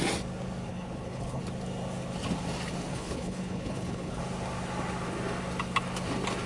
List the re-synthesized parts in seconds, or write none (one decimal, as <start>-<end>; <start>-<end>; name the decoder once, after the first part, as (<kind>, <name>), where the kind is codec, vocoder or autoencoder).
0.7-1.4 (codec, HILCodec); 2.9-4.2